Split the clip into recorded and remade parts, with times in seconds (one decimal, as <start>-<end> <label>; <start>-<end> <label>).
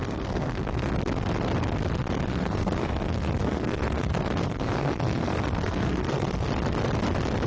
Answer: 0.0-0.9 remade; 0.9-2.3 recorded; 2.3-6.5 remade; 6.5-7.5 recorded